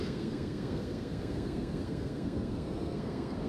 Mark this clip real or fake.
fake